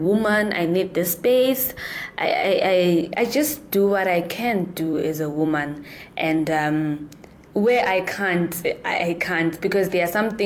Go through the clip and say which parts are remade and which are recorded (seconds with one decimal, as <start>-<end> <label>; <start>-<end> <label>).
0.0-10.5 remade